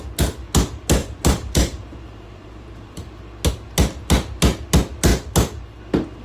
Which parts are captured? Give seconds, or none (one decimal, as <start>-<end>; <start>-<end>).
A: 0.0-1.0; 3.2-6.2